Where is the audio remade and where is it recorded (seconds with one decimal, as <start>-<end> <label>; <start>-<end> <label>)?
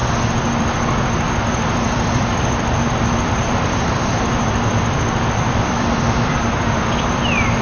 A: 0.0-1.4 recorded; 1.4-7.6 remade